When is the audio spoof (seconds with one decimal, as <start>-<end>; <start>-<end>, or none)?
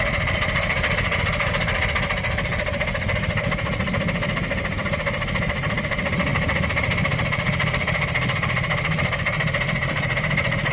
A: none